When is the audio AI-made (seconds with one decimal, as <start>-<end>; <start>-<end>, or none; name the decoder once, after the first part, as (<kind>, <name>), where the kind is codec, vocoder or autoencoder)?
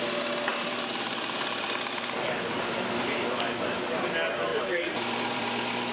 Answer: 0.5-4.0 (vocoder, BigVGAN v2); 4.5-5.9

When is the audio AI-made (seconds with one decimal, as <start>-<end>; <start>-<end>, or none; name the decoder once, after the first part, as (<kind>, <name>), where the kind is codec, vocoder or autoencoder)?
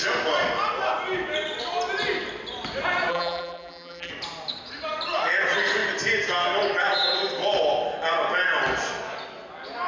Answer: 3.1-4.1 (vocoder, BigVGAN v2)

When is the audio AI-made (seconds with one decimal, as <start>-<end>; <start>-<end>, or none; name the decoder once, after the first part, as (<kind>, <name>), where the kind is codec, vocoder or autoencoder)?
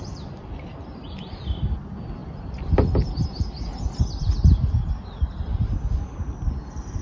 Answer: none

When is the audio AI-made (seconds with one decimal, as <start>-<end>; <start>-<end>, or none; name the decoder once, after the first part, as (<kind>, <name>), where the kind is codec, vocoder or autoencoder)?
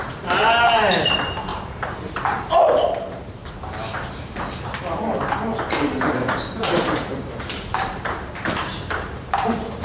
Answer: 0.0-1.5 (vocoder, BigVGAN v2); 2.4-3.4; 5.7-9.8